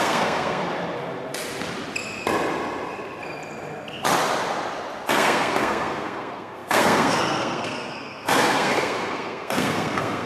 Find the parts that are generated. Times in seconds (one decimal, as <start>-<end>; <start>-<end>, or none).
0.0-0.6; 5.1-10.3